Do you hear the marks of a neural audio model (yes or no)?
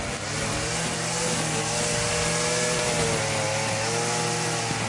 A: no